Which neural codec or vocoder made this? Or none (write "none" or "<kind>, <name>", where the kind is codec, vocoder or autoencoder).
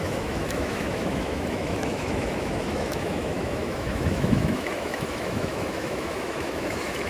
autoencoder, DAC-VAE